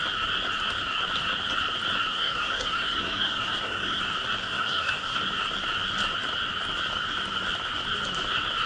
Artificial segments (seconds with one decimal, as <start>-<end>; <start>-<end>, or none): 2.1-4.0; 4.4-5.2